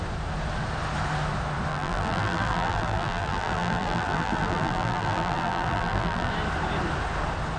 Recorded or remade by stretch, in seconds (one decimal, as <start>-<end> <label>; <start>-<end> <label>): 0.0-1.7 recorded; 1.7-6.3 remade; 6.3-7.6 recorded